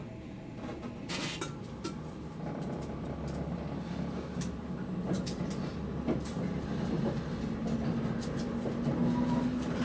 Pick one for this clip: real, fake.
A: real